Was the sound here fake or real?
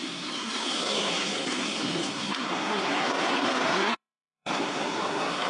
fake